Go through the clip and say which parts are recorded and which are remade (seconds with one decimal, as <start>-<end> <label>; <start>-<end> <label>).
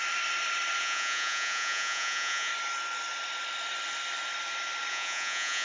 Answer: 0.0-0.8 recorded; 0.8-2.5 remade; 2.5-4.9 recorded; 4.9-5.6 remade